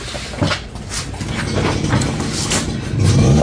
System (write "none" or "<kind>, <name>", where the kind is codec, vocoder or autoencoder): none